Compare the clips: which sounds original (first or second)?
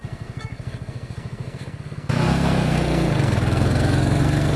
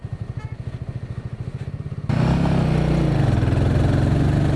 second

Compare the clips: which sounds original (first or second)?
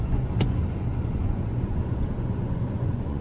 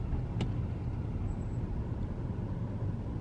second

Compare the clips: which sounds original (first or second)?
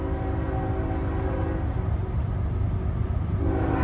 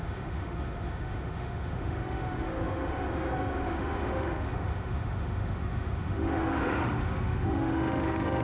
first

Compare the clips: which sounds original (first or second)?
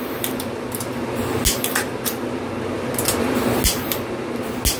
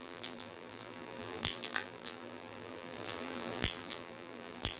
first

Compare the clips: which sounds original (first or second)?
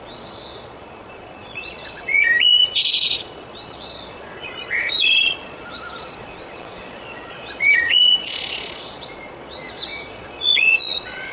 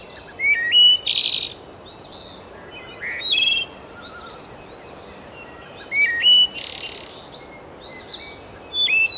second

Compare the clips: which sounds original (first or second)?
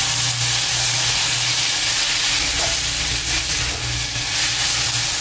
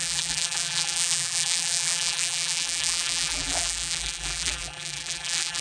first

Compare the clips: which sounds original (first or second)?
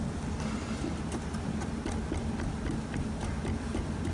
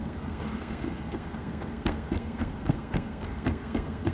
first